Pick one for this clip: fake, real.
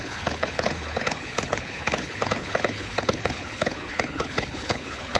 fake